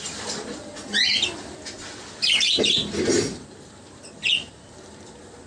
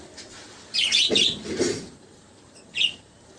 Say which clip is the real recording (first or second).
first